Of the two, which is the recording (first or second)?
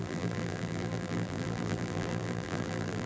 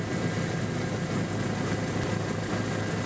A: second